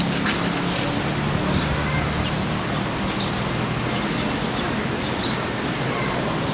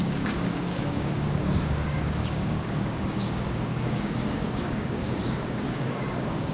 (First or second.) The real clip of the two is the first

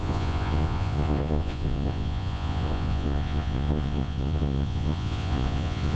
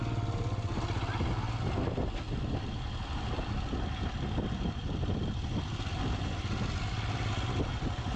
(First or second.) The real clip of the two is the second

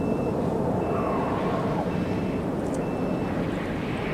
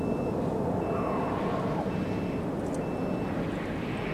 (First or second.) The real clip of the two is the second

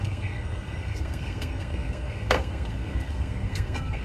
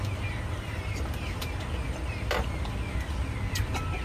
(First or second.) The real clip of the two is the second